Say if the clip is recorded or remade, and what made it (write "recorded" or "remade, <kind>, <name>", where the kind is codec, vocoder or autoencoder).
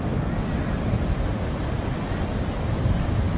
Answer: recorded